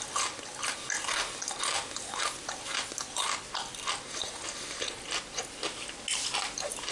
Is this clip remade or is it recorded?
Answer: recorded